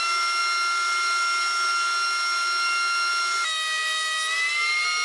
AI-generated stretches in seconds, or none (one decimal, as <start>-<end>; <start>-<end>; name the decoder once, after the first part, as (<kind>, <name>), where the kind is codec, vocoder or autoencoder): none